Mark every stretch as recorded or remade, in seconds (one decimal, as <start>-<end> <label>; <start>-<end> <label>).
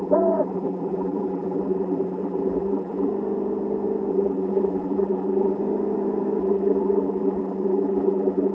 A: 0.0-3.1 remade; 3.1-4.1 recorded; 4.1-5.6 remade; 5.6-6.4 recorded; 6.4-8.5 remade